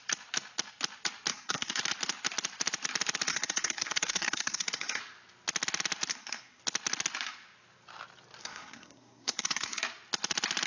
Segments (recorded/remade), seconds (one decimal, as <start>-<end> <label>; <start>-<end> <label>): 0.0-1.3 recorded; 1.3-1.8 remade; 1.8-3.3 recorded; 3.3-5.0 remade; 5.0-6.1 recorded; 6.1-6.6 remade; 6.6-8.4 recorded; 8.4-9.8 remade; 9.8-10.7 recorded